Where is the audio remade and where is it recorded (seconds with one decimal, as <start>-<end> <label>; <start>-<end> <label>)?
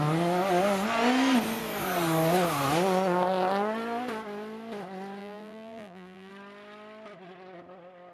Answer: 0.0-5.2 recorded; 5.2-6.3 remade; 6.3-8.1 recorded